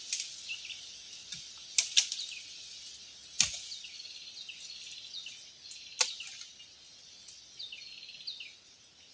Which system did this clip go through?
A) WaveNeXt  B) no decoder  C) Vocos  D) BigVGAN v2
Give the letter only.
B